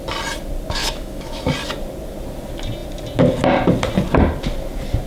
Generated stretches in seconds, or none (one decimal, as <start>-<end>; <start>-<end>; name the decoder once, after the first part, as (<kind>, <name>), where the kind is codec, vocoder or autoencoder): 0.8-1.4 (autoencoder, DAC-VAE)